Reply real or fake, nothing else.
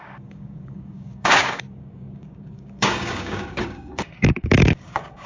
fake